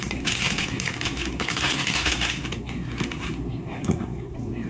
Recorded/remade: remade